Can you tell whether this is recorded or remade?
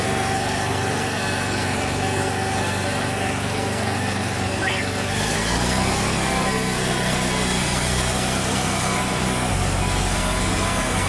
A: remade